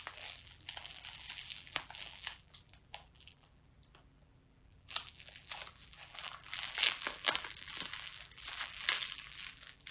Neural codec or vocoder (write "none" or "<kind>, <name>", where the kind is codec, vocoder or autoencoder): vocoder, BigVGAN v2